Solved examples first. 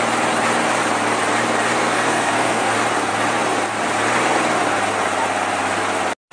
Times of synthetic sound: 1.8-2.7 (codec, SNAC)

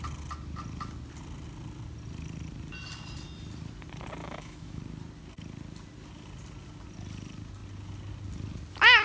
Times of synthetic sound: 4.2-4.8 (autoencoder, DAC-VAE)